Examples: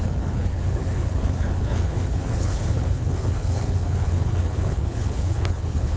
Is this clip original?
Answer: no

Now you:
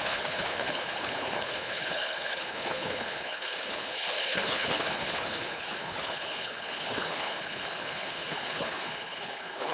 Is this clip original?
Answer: no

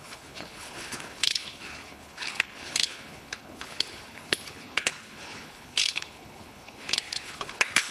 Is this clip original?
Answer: no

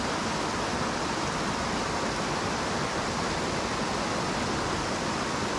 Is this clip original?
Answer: yes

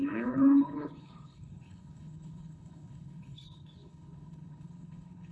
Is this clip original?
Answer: no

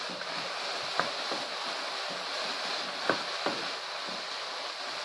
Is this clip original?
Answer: yes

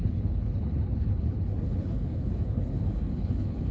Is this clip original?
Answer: no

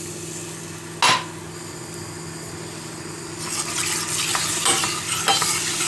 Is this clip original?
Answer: yes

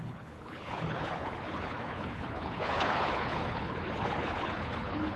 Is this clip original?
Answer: no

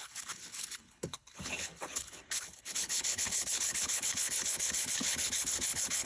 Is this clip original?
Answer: no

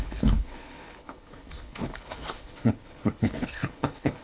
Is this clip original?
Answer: no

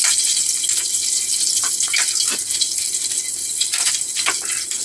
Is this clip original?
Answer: yes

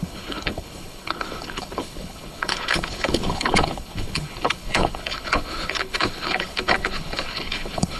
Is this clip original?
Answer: no